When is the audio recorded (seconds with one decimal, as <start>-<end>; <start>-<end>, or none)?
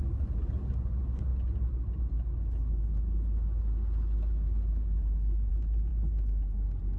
0.0-7.0